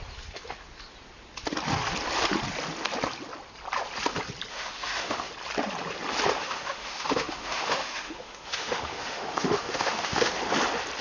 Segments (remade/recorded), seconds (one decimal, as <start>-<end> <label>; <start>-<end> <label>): 0.0-4.5 recorded; 4.5-5.3 remade; 5.3-6.4 recorded; 6.4-10.3 remade; 10.3-11.0 recorded